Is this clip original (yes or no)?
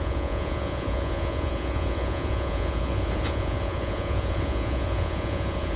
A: no